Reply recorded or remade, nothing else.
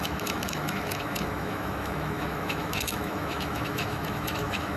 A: remade